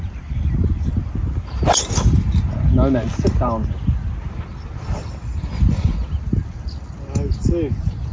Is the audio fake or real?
real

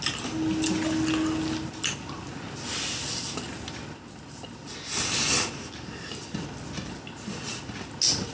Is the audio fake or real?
real